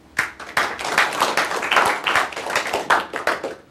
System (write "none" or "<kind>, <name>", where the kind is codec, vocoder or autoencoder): none